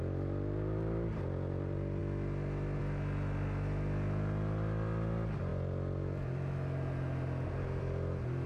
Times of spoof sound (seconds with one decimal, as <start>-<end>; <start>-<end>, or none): none